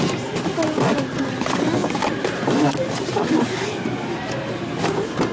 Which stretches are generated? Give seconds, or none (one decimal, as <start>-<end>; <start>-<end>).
none